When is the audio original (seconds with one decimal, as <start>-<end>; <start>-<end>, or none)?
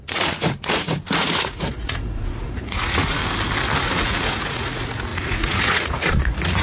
3.2-3.8